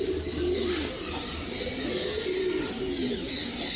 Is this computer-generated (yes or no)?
no